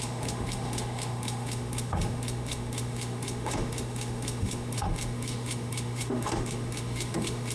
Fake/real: fake